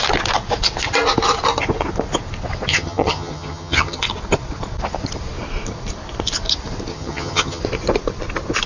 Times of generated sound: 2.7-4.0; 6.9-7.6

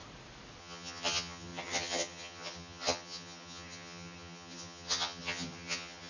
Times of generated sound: 0.6-6.1

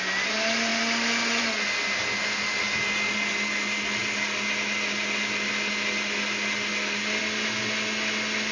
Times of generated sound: none

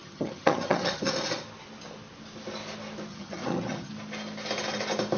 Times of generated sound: 0.0-1.1; 3.1-3.9